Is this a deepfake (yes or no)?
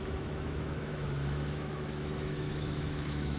yes